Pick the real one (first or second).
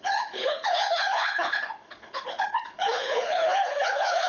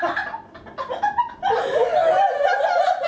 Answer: second